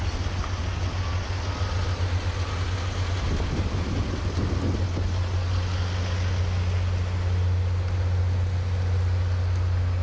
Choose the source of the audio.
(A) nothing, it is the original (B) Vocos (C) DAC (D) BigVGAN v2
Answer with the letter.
A